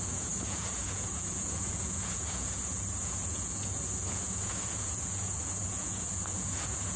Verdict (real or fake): fake